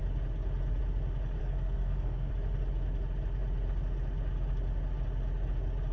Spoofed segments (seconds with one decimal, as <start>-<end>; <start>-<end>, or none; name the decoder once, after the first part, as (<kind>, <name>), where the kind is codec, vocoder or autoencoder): 1.4-2.3 (codec, SNAC)